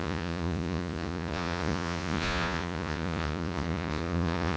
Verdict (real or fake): fake